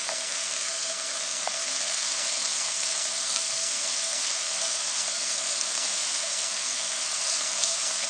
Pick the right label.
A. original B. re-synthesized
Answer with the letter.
B